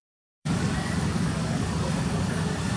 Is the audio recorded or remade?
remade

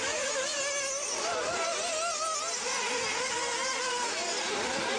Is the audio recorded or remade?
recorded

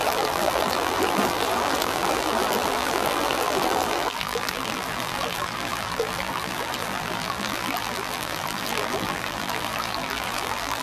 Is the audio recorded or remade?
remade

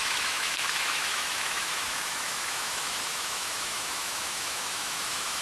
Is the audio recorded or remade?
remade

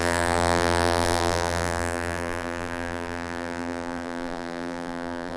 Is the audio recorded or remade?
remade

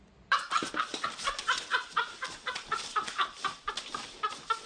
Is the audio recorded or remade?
remade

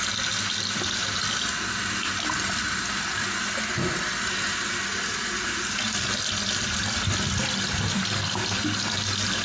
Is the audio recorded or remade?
recorded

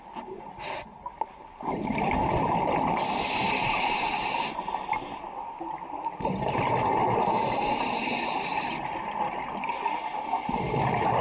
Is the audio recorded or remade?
recorded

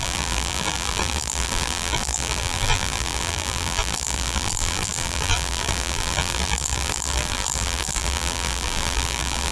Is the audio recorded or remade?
remade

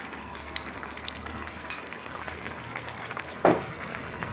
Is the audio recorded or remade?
remade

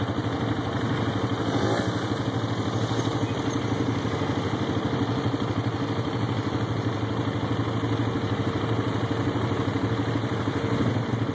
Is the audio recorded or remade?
recorded